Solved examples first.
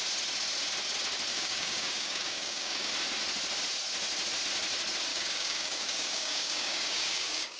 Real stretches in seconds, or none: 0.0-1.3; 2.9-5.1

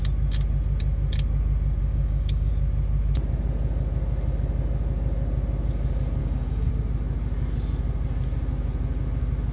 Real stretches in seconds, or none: 0.0-1.8; 2.5-6.2; 6.7-9.5